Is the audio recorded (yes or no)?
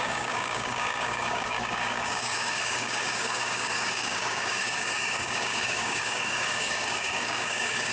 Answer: no